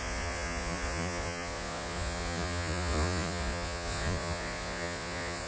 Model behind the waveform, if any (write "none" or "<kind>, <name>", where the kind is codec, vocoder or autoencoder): vocoder, Vocos